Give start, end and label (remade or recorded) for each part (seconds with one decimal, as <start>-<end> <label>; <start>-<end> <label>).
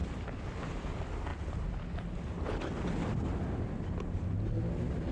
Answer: 0.0-5.1 recorded